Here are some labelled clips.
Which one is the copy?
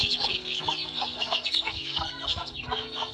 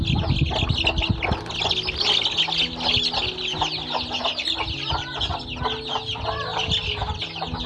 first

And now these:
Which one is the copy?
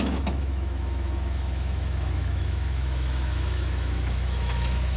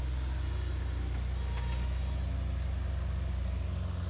first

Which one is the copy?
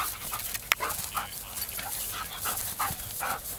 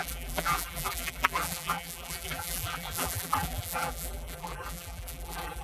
second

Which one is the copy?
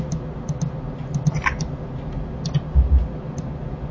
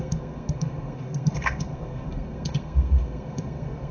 second